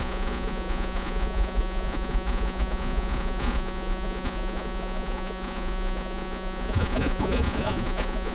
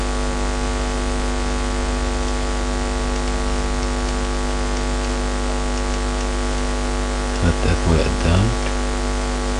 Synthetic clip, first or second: first